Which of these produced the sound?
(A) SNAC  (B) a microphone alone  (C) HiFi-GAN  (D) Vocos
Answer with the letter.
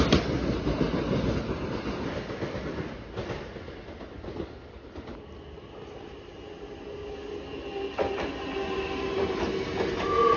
B